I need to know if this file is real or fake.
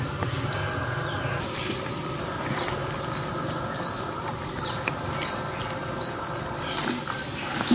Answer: real